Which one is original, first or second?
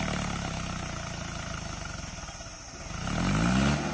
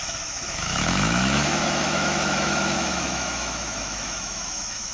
first